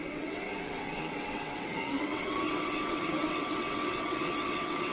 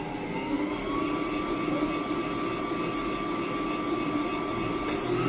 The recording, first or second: second